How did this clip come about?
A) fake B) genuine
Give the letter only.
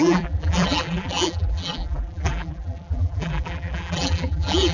A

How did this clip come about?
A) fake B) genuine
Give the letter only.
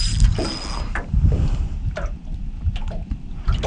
B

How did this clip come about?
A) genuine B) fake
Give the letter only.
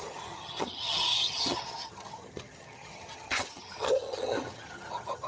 B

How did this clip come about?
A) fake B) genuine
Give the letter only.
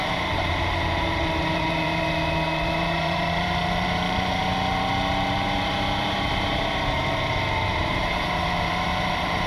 A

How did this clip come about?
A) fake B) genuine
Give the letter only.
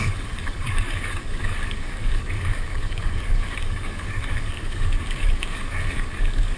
A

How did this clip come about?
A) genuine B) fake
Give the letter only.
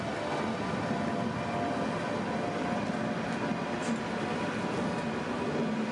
A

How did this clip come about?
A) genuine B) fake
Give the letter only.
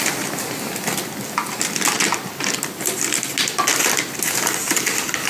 A